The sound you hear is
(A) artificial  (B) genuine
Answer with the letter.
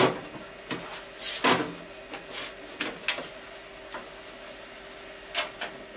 B